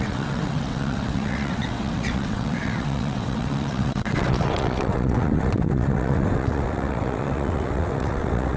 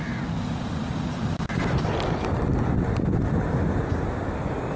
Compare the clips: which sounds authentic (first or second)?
second